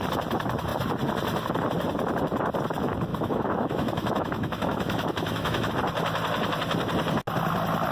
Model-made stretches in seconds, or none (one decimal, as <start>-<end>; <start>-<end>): 3.1-5.7